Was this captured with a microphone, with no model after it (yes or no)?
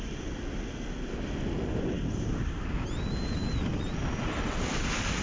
yes